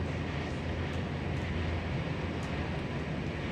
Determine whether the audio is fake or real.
real